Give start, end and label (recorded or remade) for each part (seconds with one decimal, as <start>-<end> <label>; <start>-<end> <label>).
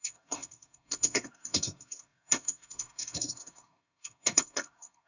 0.0-5.1 remade